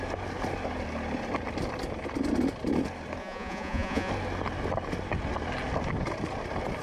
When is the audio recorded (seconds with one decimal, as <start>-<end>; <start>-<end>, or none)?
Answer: 0.0-3.2; 4.1-6.8